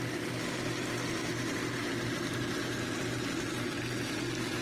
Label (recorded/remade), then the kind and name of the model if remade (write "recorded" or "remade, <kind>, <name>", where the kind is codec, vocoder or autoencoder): recorded